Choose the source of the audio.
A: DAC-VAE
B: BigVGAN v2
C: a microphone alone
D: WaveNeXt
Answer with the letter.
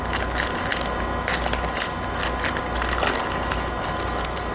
C